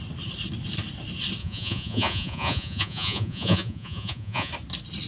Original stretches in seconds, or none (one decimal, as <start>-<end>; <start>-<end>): 0.0-1.4; 4.5-5.1